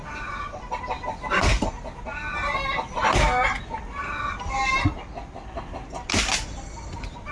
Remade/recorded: recorded